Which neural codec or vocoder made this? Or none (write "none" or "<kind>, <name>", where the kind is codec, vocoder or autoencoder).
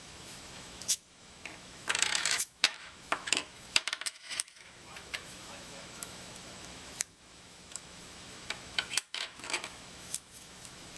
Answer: autoencoder, DAC-VAE